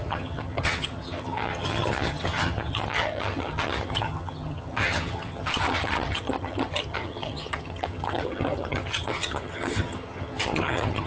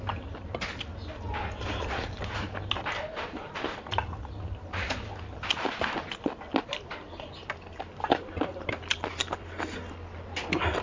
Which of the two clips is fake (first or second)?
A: first